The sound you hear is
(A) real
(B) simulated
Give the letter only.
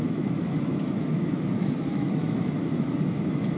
B